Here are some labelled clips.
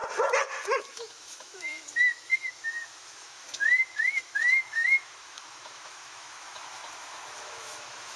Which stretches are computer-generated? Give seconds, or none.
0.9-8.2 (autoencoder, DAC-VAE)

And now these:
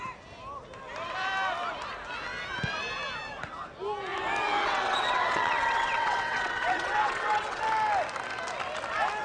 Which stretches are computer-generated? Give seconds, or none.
4.6-7.6 (vocoder, WaveNeXt)

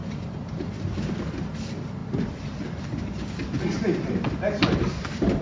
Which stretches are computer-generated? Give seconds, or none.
0.0-1.1 (vocoder, BigVGAN v2)

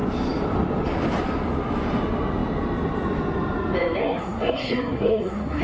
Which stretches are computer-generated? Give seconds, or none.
4.0-5.6 (codec, SNAC)

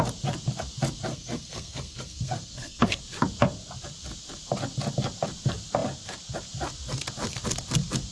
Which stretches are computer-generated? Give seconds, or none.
1.1-3.0 (codec, SNAC)

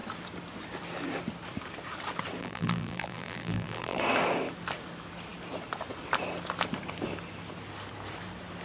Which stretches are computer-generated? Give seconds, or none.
2.4-4.0 (vocoder, BigVGAN v2)